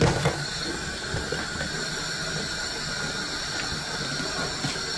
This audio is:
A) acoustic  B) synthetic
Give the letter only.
A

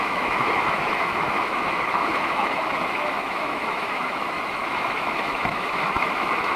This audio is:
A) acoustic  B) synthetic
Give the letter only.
B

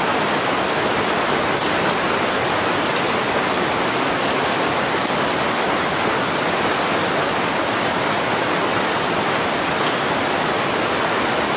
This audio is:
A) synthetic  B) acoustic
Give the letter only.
B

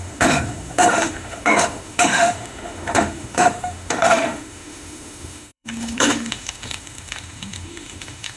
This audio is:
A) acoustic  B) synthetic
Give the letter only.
B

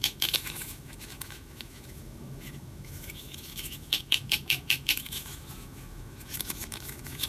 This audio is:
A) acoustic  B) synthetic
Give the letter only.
B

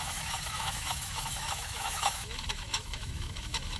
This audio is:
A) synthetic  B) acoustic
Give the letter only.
A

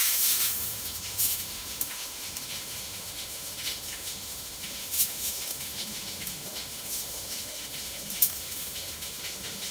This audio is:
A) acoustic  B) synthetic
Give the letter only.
B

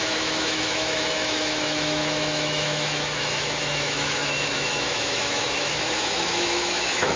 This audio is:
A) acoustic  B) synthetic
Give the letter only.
B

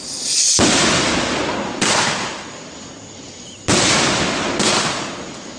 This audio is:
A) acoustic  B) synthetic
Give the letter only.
A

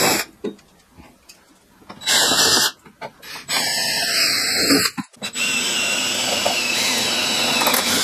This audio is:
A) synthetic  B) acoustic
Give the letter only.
B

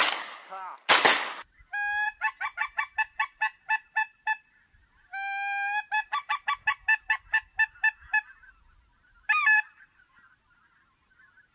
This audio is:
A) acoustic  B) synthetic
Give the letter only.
A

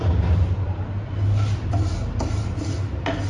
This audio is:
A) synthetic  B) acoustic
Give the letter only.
B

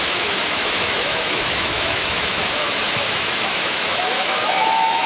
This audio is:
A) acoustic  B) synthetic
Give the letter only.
B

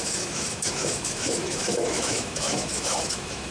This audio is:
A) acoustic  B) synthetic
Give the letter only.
B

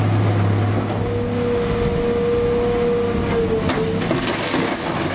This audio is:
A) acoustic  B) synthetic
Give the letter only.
A